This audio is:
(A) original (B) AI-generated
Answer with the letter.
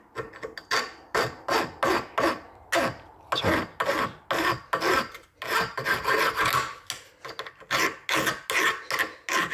A